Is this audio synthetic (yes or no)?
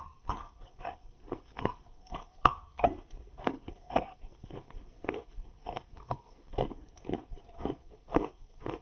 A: yes